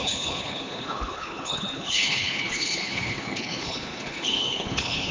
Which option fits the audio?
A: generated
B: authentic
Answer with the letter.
A